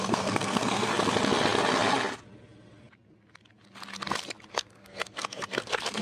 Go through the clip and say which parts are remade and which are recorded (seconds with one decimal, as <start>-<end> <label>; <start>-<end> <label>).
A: 0.0-0.9 remade; 0.9-4.5 recorded; 4.5-6.0 remade